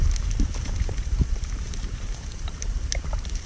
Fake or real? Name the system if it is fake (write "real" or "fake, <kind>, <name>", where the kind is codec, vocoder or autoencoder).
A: fake, vocoder, BigVGAN v2